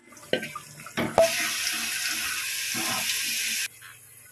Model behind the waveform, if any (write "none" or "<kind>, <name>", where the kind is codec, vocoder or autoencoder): none